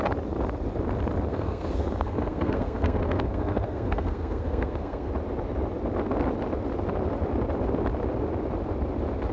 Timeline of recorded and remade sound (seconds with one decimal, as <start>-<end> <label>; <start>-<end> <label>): 0.0-1.3 recorded; 1.3-5.1 remade; 5.1-9.3 recorded